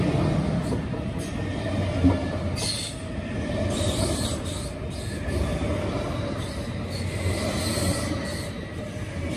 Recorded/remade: recorded